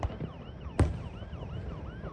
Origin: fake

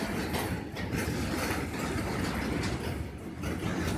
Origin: real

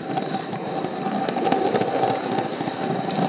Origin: real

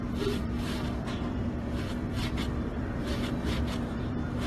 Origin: fake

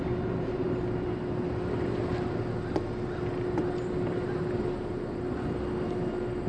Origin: real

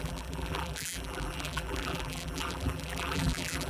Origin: fake